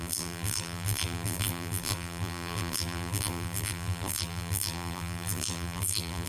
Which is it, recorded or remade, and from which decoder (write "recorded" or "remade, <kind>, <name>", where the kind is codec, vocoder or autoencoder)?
remade, vocoder, BigVGAN v2